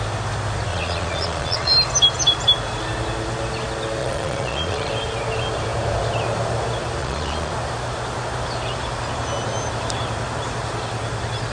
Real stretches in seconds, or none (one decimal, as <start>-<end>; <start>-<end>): 0.0-0.7; 1.7-4.0; 4.9-7.0; 7.5-11.5